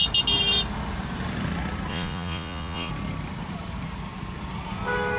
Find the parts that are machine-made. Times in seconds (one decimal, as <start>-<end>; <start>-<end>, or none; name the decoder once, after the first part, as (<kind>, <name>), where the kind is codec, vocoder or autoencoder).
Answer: 1.9-2.9 (vocoder, Vocos)